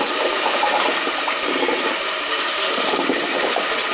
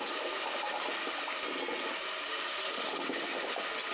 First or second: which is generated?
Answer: first